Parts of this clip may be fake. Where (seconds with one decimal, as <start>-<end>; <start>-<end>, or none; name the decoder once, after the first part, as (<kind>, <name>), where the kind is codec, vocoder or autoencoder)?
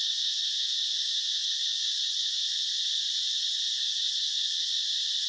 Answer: none